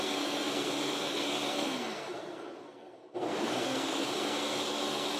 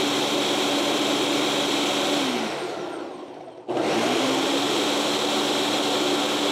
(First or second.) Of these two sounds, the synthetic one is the first